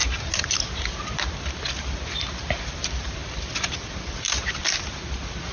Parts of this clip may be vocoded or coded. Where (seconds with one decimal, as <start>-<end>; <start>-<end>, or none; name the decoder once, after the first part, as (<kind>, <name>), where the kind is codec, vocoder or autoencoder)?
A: none